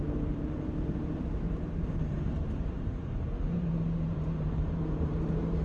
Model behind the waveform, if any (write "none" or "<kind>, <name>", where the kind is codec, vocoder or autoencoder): vocoder, BigVGAN v2